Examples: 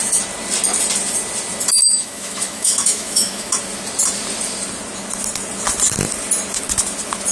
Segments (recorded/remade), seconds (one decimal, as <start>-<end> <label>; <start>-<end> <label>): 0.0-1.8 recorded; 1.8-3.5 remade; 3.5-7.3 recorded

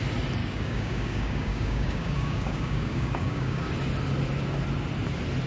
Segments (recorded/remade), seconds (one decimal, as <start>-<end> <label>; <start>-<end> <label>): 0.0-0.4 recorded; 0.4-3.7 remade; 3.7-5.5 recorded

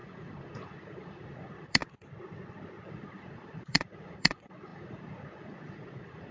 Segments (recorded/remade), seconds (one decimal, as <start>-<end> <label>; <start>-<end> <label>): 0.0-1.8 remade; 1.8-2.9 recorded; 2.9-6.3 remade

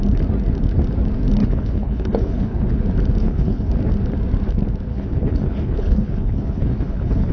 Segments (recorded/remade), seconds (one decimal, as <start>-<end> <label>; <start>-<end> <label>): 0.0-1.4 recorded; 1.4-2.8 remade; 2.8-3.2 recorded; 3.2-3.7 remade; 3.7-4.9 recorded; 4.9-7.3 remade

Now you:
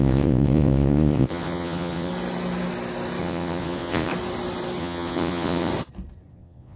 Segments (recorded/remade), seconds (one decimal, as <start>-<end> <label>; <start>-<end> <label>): 0.0-2.1 remade; 2.1-3.2 recorded; 3.2-4.1 remade; 4.1-4.8 recorded; 4.8-5.7 remade; 5.7-6.3 recorded; 6.3-6.8 remade